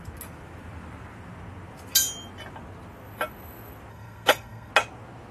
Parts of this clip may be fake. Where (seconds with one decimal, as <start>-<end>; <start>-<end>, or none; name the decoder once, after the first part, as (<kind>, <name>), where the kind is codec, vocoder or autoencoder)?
3.9-4.7 (codec, SNAC)